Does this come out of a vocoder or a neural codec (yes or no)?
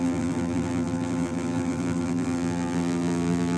yes